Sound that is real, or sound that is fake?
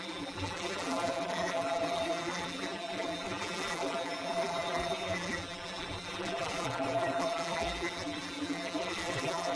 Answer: fake